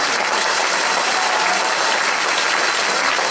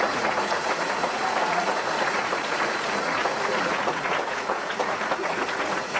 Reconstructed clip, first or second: second